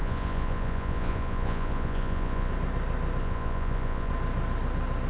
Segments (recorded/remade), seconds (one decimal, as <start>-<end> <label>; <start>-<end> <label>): 0.0-2.5 remade; 2.5-3.2 recorded; 3.2-4.1 remade; 4.1-5.1 recorded